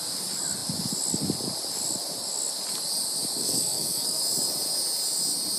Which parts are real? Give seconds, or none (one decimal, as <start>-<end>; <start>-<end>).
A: 0.0-3.4; 4.2-5.6